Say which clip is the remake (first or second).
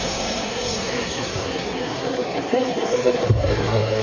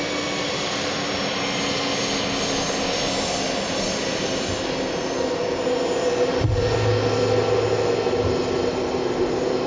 first